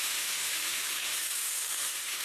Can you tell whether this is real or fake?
fake